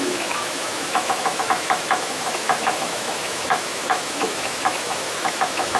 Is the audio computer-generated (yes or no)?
yes